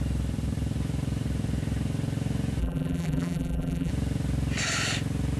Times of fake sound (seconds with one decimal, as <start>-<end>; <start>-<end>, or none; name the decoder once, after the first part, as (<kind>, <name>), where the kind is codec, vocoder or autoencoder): 2.6-3.9 (vocoder, BigVGAN v2)